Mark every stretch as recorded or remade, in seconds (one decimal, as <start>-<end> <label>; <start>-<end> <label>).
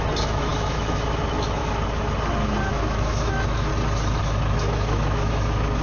0.0-1.6 remade; 1.6-2.7 recorded; 2.7-3.7 remade; 3.7-4.2 recorded; 4.2-5.8 remade